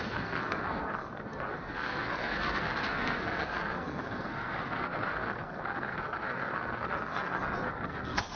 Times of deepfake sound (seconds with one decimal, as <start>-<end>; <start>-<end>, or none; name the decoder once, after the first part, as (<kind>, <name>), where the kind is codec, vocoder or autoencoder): 0.0-8.4 (codec, SNAC)